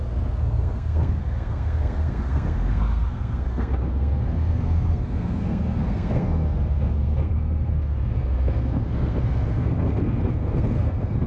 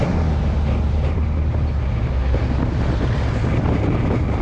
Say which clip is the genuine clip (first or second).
second